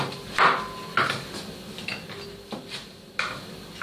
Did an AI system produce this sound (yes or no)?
no